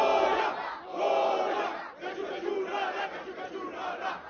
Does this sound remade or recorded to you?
recorded